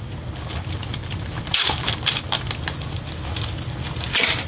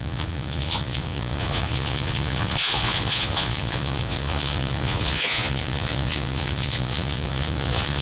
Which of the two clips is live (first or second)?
first